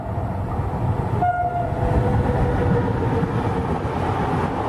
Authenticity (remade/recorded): recorded